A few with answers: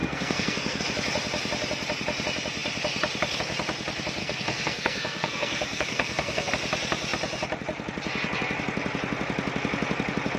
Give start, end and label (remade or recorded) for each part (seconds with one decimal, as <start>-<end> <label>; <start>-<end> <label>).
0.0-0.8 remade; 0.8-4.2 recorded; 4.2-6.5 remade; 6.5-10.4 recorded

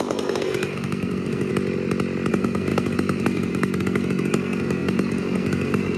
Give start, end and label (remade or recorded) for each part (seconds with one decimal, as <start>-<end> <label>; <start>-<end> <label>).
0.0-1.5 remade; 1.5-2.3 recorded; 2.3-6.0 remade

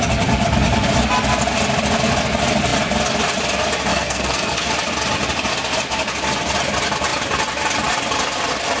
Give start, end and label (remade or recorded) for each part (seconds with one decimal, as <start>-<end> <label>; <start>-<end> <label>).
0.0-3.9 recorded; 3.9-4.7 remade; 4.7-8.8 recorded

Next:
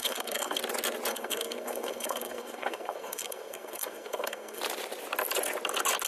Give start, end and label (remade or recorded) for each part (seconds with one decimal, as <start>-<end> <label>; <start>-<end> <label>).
0.0-0.6 remade; 0.6-1.1 recorded; 1.1-4.6 remade; 4.6-6.1 recorded

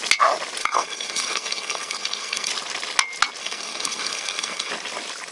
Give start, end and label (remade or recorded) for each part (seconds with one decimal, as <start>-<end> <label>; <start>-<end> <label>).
0.0-0.6 recorded; 0.6-2.5 remade; 2.5-3.4 recorded; 3.4-4.7 remade; 4.7-5.3 recorded

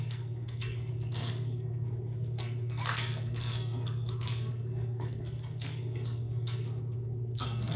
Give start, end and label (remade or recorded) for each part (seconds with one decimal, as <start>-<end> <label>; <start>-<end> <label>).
0.0-7.8 remade